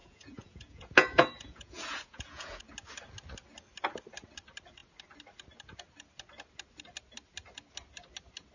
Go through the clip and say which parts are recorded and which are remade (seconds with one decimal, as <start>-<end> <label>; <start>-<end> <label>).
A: 0.0-2.6 remade; 2.6-8.5 recorded